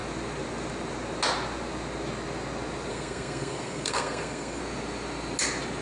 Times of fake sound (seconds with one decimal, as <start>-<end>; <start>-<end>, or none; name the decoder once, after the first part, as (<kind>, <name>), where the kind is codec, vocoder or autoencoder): 2.9-4.6 (codec, SNAC)